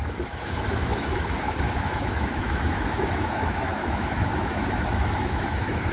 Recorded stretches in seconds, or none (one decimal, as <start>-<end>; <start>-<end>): none